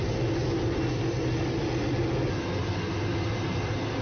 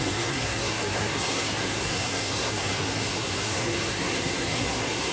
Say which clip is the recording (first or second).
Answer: first